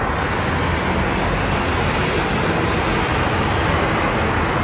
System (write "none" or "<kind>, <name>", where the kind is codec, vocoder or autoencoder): none